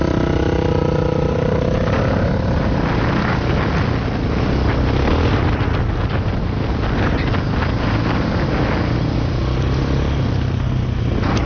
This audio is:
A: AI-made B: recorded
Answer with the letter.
B